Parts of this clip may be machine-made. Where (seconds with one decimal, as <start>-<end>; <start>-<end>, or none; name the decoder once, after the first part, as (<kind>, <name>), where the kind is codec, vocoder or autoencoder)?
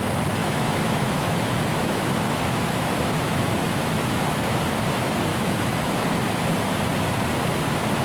0.4-4.6 (autoencoder, DAC-VAE); 5.3-5.9